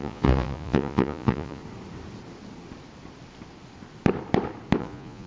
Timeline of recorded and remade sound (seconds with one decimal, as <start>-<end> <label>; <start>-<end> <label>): 0.0-1.6 remade; 1.6-4.8 recorded; 4.8-5.3 remade